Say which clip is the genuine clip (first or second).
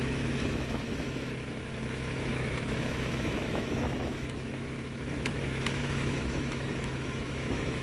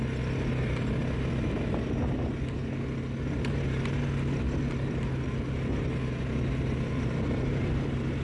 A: second